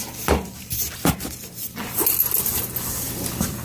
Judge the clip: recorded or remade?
recorded